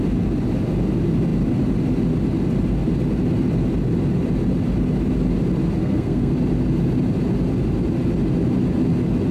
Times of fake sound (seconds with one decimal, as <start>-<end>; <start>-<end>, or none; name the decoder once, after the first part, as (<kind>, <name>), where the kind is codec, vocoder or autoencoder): 5.8-6.3 (codec, SNAC)